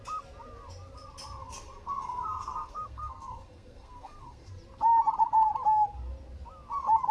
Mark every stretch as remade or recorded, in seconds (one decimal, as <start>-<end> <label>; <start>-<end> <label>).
0.0-1.4 recorded; 1.4-4.5 remade; 4.5-7.1 recorded